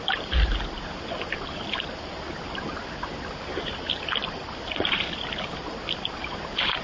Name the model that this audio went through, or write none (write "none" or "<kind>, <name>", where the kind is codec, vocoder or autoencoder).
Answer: none